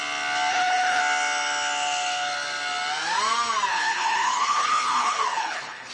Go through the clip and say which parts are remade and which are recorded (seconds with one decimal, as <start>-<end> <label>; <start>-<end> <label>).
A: 0.0-0.5 recorded; 0.5-1.0 remade; 1.0-3.7 recorded; 3.7-5.9 remade